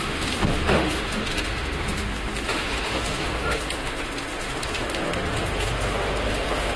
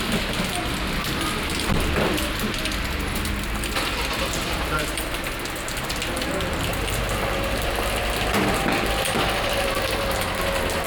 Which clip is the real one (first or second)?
second